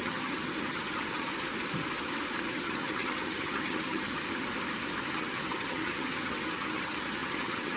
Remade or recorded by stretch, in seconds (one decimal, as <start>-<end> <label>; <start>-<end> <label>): 0.0-1.3 remade; 1.3-2.5 recorded; 2.5-4.2 remade; 4.2-5.1 recorded; 5.1-7.8 remade